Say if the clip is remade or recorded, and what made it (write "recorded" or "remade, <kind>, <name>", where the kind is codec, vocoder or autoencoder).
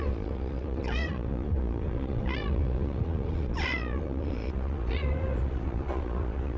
remade, vocoder, Vocos